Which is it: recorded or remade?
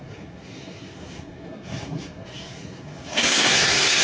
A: remade